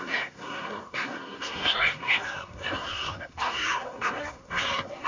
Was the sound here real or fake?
fake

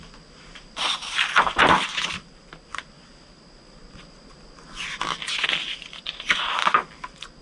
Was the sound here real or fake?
real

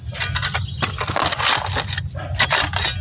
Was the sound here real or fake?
real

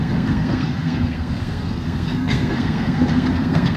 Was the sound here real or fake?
fake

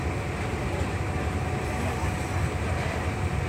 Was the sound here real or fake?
real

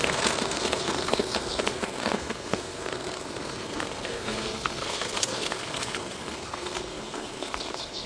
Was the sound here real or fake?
fake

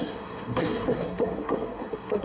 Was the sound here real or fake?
fake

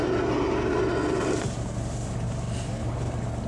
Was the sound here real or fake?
real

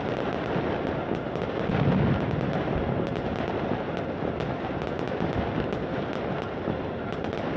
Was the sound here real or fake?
real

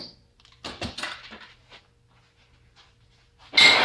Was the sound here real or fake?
real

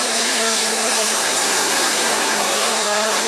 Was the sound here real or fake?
fake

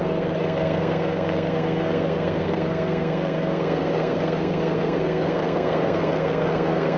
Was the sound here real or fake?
fake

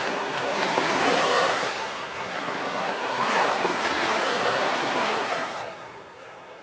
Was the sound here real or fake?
fake